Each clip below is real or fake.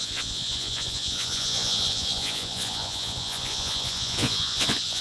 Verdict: fake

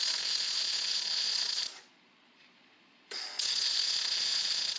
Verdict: fake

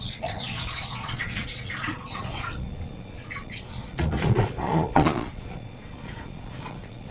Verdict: fake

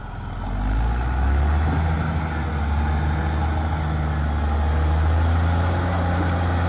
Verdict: real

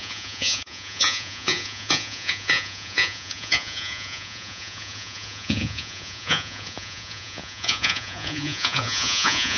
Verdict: fake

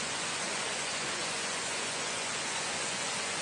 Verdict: fake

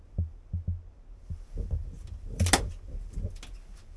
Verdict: real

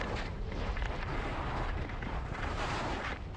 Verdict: real